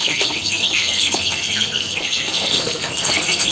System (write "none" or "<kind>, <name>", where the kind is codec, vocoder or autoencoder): codec, SNAC